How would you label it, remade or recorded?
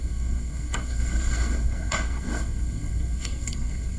remade